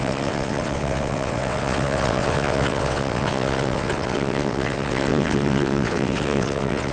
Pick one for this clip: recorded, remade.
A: remade